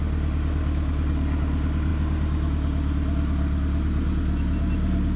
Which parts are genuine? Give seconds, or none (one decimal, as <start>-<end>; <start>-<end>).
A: 0.0-5.2